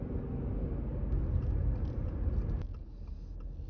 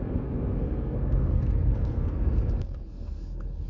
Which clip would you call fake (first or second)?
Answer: second